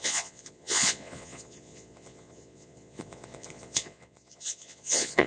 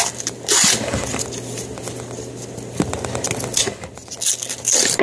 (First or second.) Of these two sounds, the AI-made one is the first